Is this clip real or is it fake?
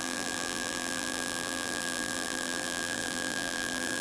fake